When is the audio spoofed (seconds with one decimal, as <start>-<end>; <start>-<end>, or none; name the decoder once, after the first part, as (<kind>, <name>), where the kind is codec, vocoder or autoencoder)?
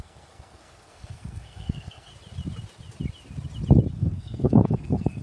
0.0-2.1 (codec, SNAC); 3.9-5.2